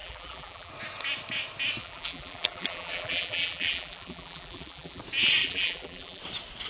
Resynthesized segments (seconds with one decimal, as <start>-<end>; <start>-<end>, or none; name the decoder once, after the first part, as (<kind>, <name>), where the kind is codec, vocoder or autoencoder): 0.0-0.7 (vocoder, BigVGAN v2); 1.8-5.0; 5.4-6.2